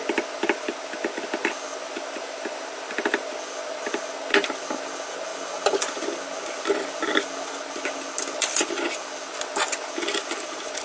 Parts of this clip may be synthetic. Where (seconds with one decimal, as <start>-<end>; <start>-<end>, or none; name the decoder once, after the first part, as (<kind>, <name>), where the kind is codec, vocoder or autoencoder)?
none